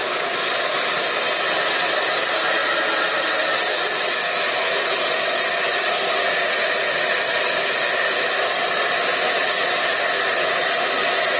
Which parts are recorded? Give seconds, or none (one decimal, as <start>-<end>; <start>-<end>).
0.0-11.4